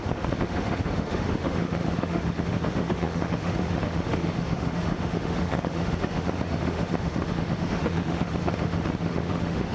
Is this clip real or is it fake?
fake